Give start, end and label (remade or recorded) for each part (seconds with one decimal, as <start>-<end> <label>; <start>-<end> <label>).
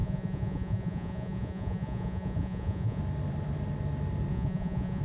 0.0-3.0 remade; 3.0-4.3 recorded; 4.3-5.0 remade